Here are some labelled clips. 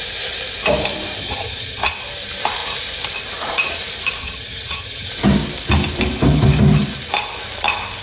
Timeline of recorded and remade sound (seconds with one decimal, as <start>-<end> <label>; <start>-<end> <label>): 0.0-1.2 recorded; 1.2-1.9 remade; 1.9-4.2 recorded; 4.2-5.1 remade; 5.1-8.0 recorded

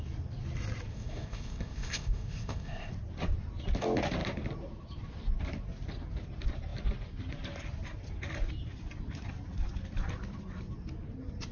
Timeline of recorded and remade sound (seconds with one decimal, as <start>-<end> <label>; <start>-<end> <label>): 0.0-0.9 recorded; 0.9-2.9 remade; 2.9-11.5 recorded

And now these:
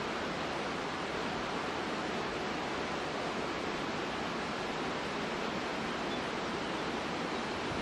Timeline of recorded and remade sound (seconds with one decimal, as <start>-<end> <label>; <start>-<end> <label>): 0.0-7.8 recorded

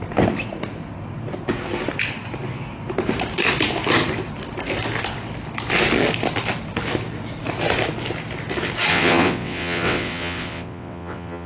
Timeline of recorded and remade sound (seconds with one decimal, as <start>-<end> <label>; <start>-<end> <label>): 0.0-8.9 recorded; 8.9-11.5 remade